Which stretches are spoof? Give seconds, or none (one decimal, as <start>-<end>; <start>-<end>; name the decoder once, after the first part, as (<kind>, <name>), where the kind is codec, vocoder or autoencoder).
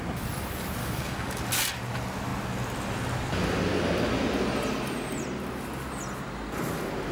0.8-1.4 (codec, DAC)